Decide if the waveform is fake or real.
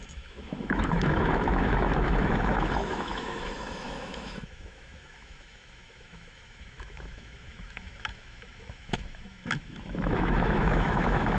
fake